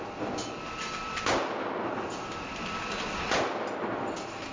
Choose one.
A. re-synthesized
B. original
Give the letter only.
B